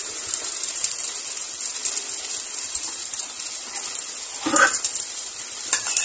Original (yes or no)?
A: yes